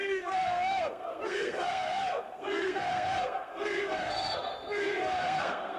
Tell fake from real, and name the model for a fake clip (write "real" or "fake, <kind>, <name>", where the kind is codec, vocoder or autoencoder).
fake, codec, SNAC